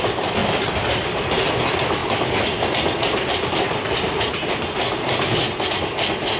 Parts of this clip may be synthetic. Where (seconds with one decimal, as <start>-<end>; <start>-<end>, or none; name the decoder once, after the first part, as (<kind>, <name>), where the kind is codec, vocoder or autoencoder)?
none